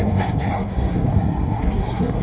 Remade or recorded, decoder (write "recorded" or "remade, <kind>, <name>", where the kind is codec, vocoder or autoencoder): remade, codec, SNAC